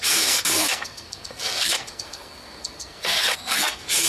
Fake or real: fake